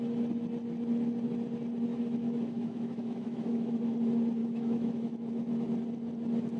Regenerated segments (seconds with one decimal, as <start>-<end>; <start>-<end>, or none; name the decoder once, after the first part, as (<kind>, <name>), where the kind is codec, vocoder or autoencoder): 1.9-3.8 (autoencoder, DAC-VAE); 4.4-5.5